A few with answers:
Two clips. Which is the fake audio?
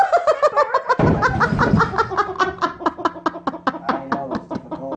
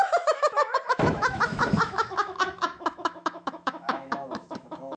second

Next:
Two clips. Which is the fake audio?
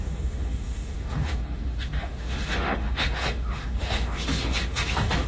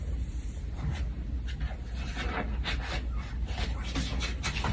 first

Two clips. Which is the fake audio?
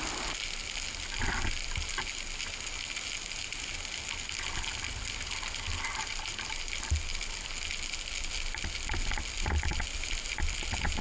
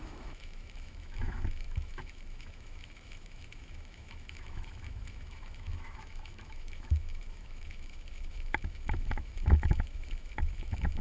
second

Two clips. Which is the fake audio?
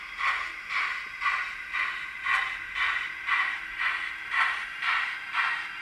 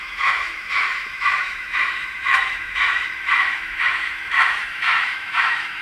second